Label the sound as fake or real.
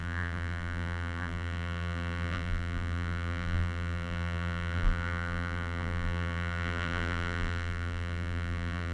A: fake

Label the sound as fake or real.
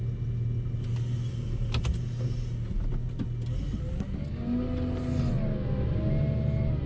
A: real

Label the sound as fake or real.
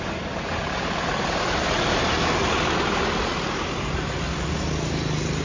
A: real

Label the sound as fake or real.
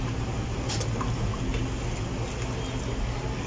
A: real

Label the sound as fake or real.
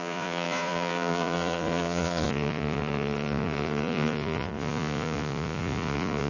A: fake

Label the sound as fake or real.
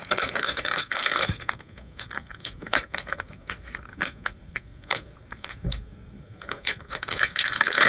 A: fake